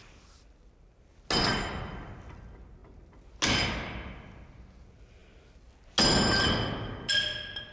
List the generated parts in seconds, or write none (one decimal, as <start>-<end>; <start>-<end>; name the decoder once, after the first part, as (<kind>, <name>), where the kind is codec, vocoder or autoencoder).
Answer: none